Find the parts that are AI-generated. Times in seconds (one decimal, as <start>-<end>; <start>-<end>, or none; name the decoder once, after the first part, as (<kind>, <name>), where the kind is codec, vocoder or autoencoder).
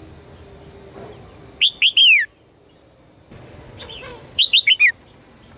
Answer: 4.1-4.9 (vocoder, BigVGAN v2)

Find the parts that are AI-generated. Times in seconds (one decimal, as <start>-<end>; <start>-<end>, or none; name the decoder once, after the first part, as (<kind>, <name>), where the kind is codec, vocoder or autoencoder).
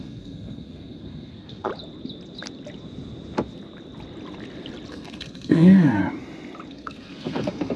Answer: 0.0-1.7 (codec, SNAC); 4.9-6.0; 6.7-7.8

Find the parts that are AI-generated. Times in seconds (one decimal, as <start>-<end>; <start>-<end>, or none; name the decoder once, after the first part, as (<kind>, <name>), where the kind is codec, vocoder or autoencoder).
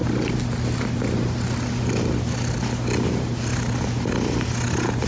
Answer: none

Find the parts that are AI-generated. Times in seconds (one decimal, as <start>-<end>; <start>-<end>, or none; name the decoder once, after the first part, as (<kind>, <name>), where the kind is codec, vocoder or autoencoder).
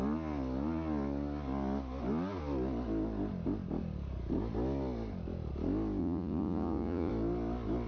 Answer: 6.0-7.1 (vocoder, Vocos)